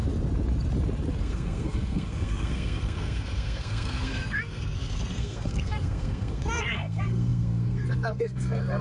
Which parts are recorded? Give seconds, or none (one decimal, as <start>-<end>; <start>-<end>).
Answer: 0.0-1.2